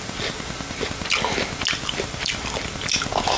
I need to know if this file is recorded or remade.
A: recorded